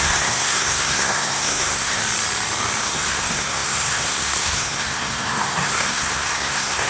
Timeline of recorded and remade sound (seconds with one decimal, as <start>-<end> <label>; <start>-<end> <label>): 0.0-2.0 remade; 2.0-2.8 recorded; 2.8-6.9 remade